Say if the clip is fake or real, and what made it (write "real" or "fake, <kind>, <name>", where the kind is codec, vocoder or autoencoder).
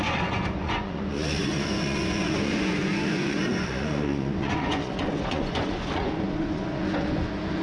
fake, vocoder, Vocos